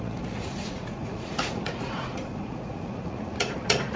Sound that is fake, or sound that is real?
fake